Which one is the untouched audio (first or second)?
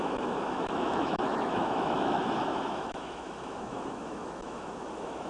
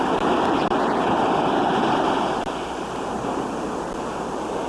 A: second